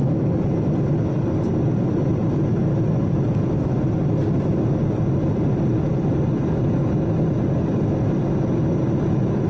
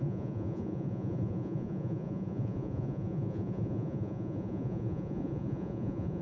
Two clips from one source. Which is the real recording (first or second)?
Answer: first